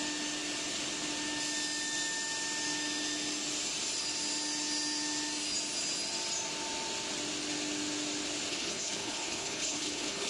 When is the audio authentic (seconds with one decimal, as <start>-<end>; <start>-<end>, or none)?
0.0-8.5